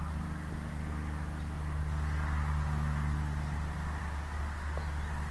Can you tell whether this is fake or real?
real